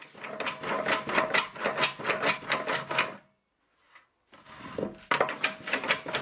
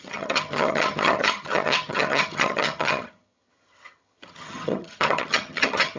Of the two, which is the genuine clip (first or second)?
first